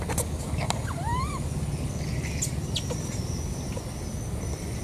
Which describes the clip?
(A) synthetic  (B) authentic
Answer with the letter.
B